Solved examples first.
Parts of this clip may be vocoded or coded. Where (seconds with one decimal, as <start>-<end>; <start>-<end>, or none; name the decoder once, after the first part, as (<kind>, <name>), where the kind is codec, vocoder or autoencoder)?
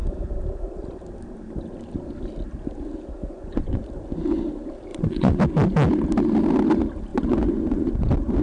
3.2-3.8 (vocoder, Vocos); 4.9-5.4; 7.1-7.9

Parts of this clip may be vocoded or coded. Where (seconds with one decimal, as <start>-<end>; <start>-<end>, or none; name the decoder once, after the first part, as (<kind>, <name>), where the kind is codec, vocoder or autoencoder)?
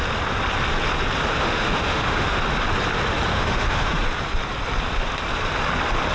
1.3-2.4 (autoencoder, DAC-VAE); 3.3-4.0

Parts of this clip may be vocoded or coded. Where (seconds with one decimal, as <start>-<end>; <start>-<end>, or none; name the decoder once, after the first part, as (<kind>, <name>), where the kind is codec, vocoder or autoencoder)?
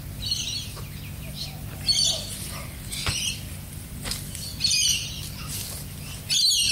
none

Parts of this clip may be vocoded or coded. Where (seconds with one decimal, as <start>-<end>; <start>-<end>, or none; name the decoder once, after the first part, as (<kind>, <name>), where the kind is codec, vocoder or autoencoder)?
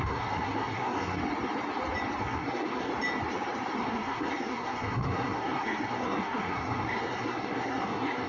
0.0-1.2 (codec, SNAC); 2.2-2.9; 3.8-8.3